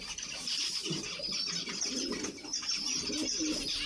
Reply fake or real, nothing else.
real